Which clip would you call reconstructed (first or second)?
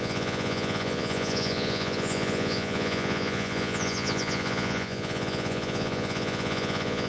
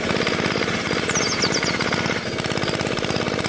first